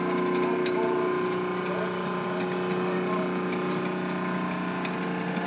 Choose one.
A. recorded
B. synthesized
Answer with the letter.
A